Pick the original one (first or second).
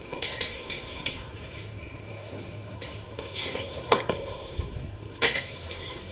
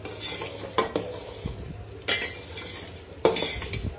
second